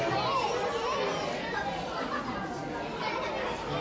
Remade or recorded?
recorded